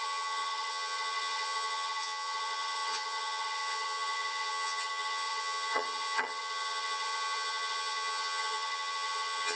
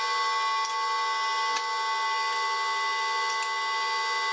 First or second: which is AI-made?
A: first